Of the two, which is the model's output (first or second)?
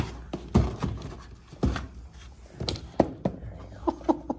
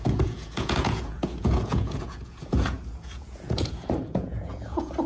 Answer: second